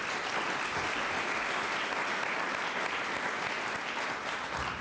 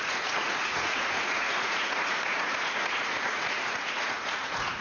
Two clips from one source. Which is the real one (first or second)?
first